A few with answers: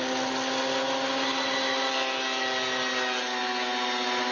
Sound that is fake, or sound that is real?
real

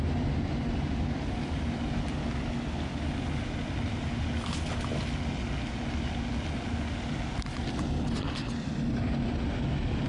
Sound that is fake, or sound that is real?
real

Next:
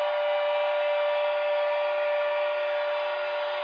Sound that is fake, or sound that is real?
real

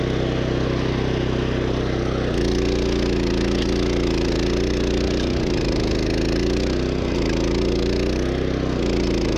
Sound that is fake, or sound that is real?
real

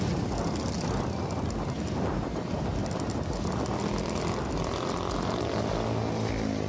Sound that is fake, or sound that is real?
real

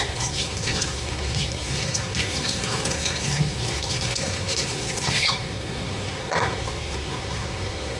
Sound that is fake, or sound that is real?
fake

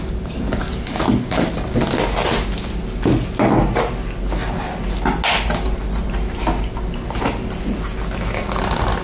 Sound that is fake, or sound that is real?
real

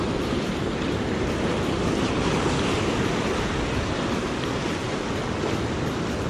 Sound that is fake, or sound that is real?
real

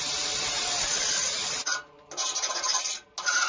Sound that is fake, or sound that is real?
real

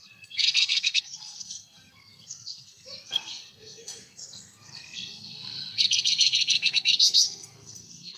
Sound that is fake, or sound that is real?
fake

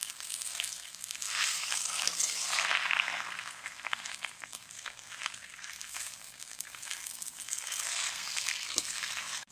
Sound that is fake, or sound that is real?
fake